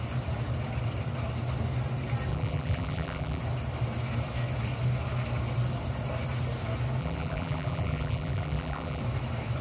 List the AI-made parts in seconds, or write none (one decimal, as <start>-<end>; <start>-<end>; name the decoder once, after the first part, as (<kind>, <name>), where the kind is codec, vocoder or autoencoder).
2.3-3.4 (vocoder, BigVGAN v2); 7.0-9.0